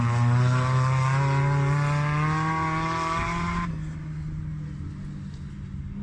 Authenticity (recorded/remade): recorded